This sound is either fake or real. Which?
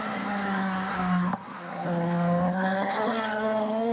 fake